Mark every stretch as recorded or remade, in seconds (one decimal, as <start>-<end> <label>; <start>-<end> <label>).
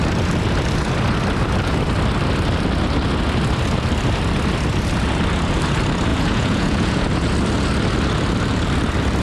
0.0-6.1 recorded; 6.1-7.0 remade; 7.0-9.2 recorded